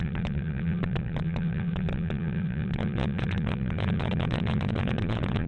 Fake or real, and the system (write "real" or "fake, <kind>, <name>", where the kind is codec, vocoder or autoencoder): fake, vocoder, Vocos